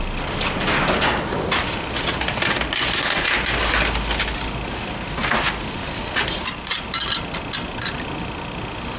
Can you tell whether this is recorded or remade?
recorded